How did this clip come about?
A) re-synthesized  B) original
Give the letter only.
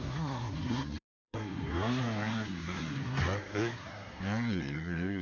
A